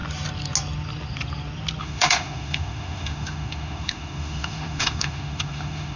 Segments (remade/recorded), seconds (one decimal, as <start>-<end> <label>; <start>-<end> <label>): 0.0-1.8 recorded; 1.8-6.0 remade